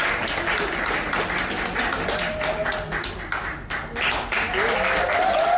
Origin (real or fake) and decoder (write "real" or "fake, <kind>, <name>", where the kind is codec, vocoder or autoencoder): real